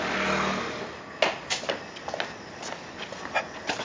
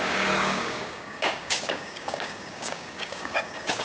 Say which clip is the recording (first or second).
first